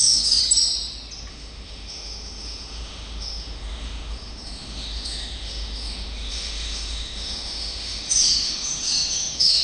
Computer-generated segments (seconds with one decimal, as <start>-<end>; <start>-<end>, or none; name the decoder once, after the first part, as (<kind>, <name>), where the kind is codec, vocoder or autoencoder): 0.0-0.4 (autoencoder, DAC-VAE); 1.3-9.6